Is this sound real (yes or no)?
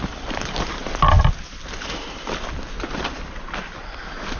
yes